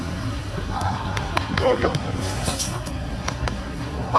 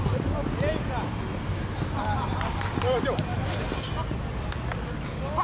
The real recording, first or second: second